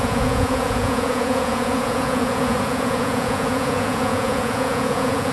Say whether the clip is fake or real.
fake